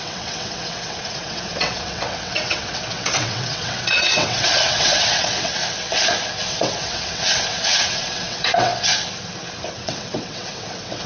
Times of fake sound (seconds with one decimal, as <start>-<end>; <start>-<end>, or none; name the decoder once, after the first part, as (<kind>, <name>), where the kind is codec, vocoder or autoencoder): 0.0-5.6 (vocoder, WaveNeXt); 6.5-8.7; 9.7-11.1